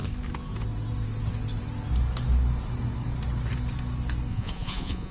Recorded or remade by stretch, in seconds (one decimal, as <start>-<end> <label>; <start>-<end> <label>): 0.0-4.3 recorded; 4.3-5.1 remade